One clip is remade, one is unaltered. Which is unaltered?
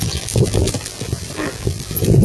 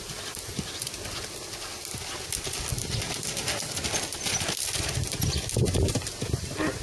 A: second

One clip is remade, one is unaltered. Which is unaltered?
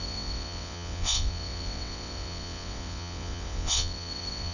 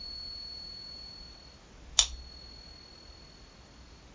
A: second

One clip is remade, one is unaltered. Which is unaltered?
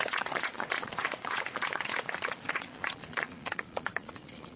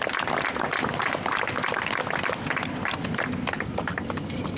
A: second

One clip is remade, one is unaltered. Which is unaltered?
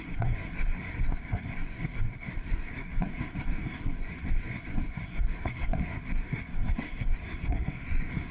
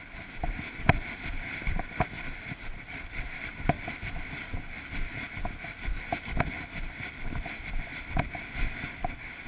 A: second